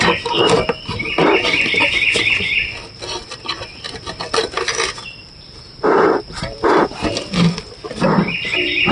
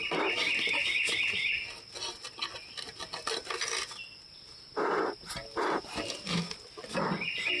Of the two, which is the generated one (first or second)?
first